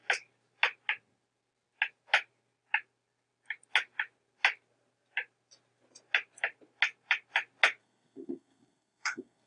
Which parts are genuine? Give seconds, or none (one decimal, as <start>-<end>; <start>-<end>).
0.0-7.8